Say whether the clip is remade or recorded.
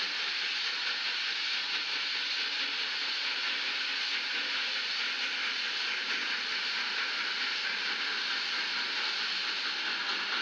recorded